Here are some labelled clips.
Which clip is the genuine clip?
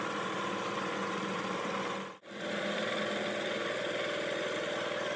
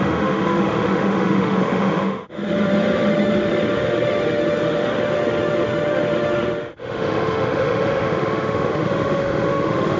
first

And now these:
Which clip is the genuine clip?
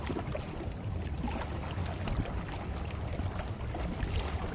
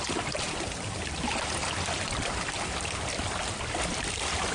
first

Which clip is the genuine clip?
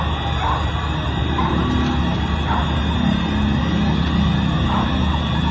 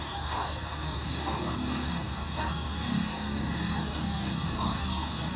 first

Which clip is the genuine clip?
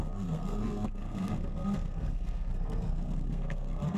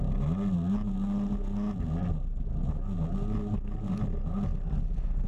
second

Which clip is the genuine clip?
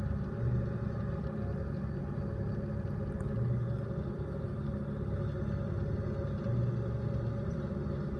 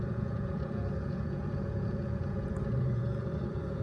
first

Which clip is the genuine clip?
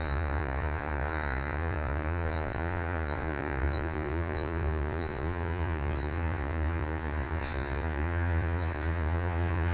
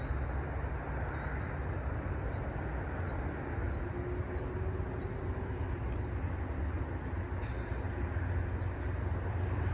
second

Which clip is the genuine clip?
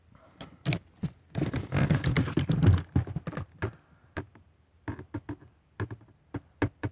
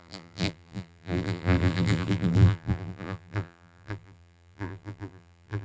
first